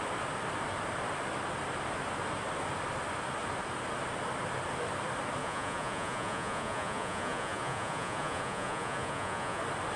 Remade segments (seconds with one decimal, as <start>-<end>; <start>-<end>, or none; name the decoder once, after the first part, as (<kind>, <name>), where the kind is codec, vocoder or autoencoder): 5.4-9.6 (vocoder, Vocos)